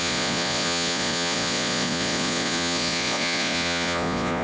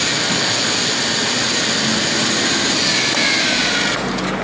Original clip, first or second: second